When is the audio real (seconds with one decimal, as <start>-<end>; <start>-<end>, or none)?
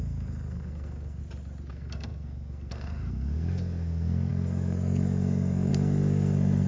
1.2-1.7